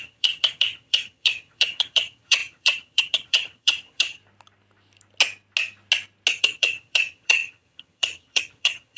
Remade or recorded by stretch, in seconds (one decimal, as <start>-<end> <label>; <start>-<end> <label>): 0.0-4.2 remade; 4.2-6.3 recorded; 6.3-9.0 remade